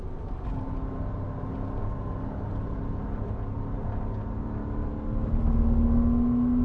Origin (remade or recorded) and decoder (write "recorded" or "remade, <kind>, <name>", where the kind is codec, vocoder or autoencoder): recorded